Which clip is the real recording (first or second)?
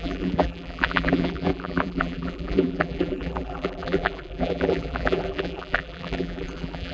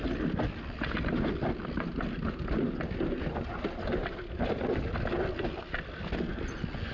second